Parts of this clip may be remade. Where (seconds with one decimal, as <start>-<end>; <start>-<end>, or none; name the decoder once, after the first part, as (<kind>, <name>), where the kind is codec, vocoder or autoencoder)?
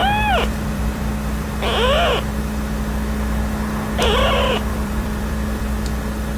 0.0-1.5 (vocoder, BigVGAN v2); 4.7-5.6